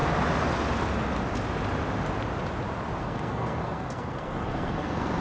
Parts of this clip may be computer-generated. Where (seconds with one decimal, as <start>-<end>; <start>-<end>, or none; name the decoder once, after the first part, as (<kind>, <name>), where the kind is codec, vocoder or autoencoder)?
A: 3.0-5.2 (codec, SNAC)